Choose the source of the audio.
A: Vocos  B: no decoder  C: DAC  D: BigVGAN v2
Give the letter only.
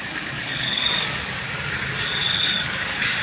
C